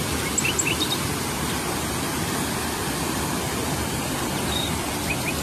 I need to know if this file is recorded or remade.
recorded